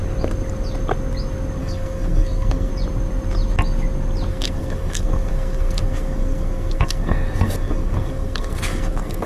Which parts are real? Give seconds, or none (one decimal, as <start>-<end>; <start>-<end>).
0.0-1.6; 2.7-4.3